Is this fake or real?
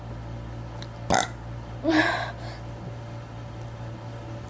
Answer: real